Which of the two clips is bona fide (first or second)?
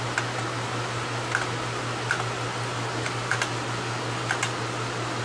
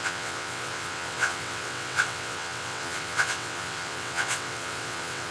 first